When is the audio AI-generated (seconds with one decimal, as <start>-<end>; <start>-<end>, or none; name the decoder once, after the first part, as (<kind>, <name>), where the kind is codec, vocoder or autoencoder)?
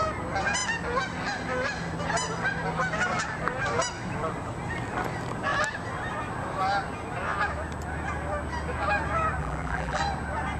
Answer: 9.4-10.0 (vocoder, BigVGAN v2)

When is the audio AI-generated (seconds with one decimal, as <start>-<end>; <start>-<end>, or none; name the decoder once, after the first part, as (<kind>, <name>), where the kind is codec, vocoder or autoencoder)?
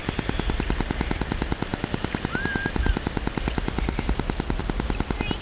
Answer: none